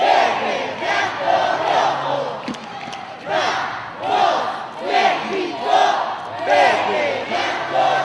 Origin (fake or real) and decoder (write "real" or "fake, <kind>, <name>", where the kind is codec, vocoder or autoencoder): real